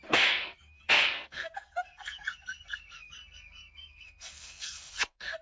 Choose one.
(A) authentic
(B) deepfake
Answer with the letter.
B